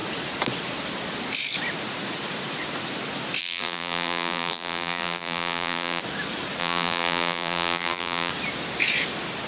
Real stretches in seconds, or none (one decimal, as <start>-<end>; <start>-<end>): 0.0-3.4; 6.0-6.6; 8.3-9.5